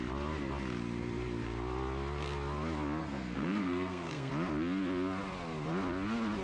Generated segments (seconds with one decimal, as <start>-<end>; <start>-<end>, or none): 3.0-4.3